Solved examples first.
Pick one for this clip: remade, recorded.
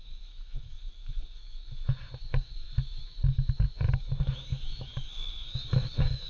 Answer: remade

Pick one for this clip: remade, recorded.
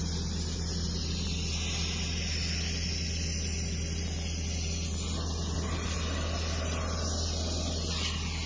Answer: recorded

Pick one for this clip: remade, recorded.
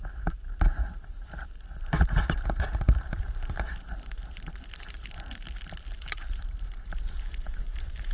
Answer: remade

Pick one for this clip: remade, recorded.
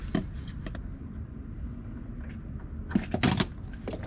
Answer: recorded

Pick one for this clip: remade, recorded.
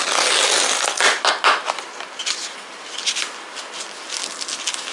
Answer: recorded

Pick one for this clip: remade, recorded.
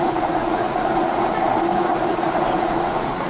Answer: remade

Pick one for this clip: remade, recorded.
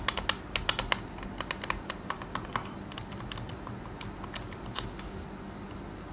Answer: recorded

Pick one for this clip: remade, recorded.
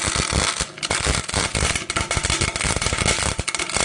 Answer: recorded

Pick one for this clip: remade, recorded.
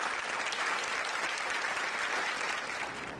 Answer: recorded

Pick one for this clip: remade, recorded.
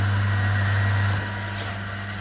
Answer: recorded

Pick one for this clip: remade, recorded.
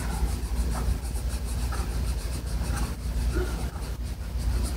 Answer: recorded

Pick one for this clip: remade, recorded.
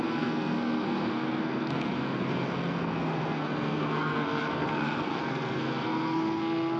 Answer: remade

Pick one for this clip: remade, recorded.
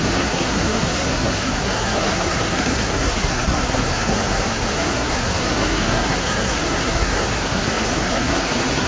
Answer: remade